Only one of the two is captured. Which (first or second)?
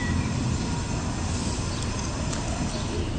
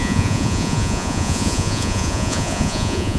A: first